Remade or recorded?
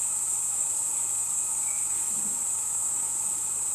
remade